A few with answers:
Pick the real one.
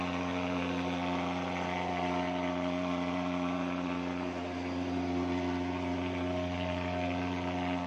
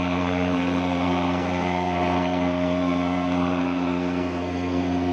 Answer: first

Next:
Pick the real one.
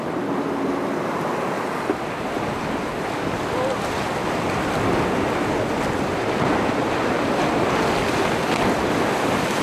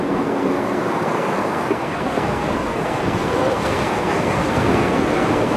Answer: first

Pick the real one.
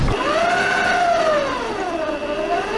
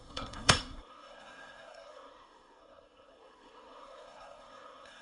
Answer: first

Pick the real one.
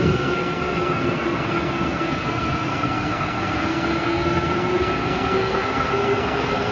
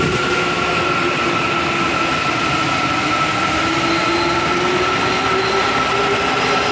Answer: second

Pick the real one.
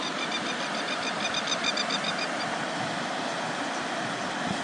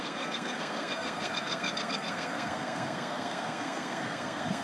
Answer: first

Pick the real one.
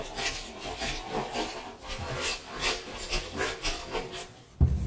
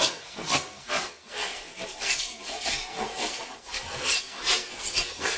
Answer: first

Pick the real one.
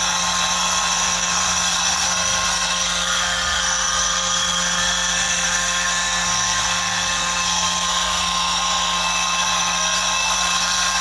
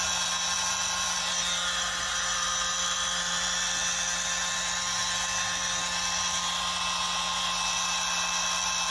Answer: second